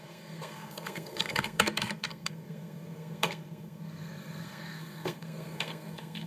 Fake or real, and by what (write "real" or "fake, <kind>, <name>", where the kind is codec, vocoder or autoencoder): fake, codec, SNAC